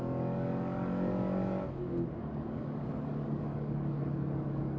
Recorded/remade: remade